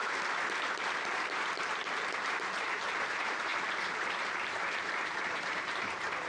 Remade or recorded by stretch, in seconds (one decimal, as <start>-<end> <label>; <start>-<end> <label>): 0.0-1.2 recorded; 1.2-6.3 remade